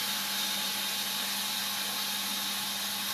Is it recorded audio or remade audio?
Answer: recorded